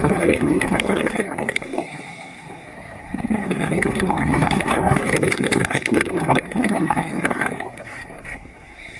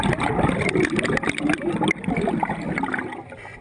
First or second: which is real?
second